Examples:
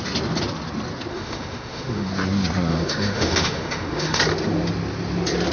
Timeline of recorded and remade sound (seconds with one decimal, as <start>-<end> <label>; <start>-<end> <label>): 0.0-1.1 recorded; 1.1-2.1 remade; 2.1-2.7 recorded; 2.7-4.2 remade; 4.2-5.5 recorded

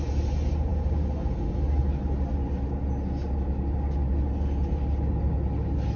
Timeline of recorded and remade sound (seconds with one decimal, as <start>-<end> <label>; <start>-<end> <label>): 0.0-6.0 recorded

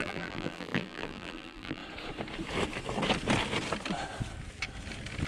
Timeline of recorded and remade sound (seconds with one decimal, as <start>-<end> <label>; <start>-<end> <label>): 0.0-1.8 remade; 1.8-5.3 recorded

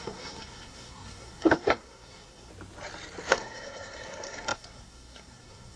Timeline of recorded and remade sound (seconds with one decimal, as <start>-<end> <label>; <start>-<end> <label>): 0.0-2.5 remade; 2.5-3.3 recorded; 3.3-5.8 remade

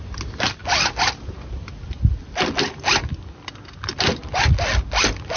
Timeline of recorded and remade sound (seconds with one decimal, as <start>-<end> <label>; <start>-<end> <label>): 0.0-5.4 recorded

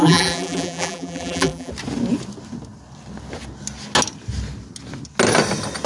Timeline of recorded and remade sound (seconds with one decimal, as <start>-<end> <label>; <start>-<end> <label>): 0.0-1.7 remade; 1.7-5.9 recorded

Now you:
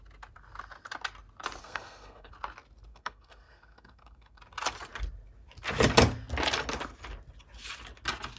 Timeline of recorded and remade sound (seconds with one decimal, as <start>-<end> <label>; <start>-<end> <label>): 0.0-1.6 recorded; 1.6-2.3 remade; 2.3-2.9 recorded; 2.9-4.4 remade; 4.4-8.4 recorded

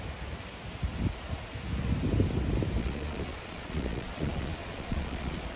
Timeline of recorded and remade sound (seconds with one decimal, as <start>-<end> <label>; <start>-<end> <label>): 0.0-2.8 recorded; 2.8-5.6 remade